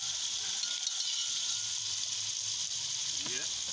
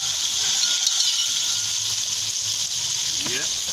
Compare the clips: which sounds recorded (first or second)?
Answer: second